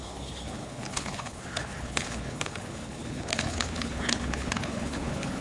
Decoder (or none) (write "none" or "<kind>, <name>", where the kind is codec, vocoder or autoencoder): codec, HILCodec